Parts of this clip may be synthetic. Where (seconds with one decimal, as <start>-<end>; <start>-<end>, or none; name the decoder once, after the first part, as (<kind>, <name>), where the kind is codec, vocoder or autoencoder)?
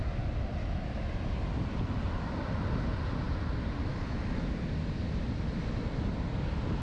0.6-1.1 (autoencoder, DAC-VAE); 3.9-4.5